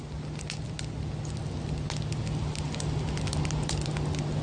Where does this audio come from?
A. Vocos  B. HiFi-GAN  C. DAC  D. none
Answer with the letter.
D